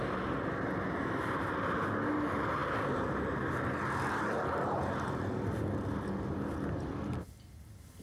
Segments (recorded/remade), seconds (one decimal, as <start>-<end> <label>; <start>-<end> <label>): 0.0-8.0 recorded